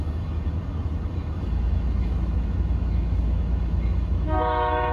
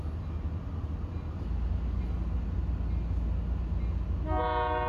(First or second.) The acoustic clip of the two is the second